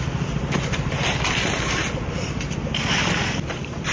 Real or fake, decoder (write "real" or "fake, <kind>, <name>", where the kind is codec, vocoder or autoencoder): real